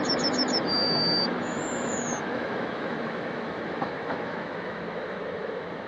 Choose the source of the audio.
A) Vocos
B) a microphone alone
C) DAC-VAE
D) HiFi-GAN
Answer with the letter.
C